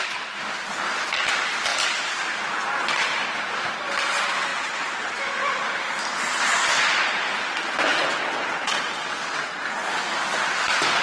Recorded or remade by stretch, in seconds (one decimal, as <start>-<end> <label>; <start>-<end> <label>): 0.0-4.5 recorded; 4.5-5.2 remade; 5.2-7.9 recorded; 7.9-9.6 remade; 9.6-11.0 recorded